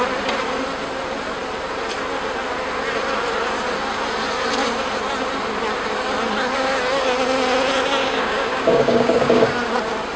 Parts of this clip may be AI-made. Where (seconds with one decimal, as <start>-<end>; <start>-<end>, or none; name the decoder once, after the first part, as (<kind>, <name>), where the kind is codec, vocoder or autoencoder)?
8.0-9.5 (codec, DAC)